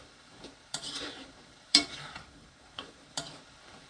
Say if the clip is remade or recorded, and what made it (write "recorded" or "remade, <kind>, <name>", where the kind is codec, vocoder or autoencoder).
remade, vocoder, BigVGAN v2